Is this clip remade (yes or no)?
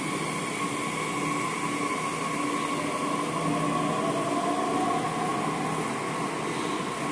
no